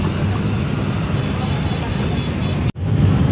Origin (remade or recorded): recorded